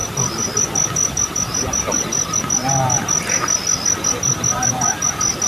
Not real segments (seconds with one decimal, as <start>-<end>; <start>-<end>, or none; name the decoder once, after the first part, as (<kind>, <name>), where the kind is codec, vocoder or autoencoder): none